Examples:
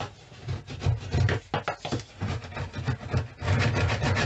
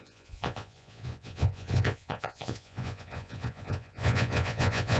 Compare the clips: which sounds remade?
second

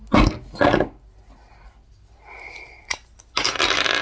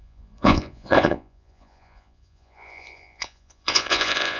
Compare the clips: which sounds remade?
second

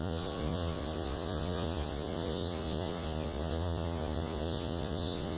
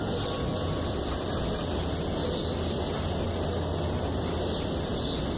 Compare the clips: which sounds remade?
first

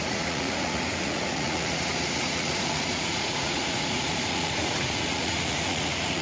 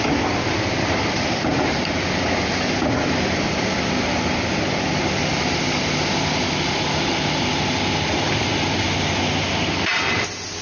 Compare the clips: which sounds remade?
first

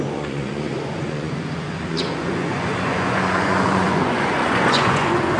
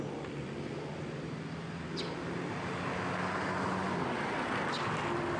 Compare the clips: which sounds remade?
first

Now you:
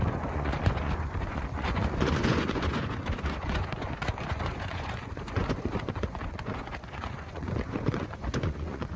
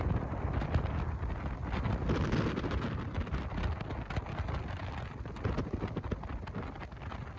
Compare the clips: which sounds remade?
first